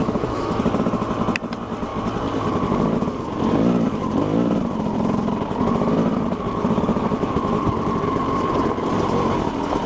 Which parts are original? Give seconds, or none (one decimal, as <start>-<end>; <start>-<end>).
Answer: 0.6-9.9